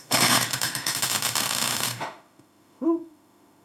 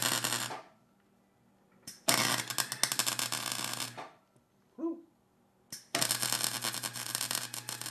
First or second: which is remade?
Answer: first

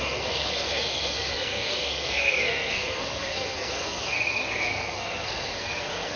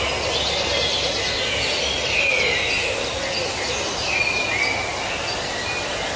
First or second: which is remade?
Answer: first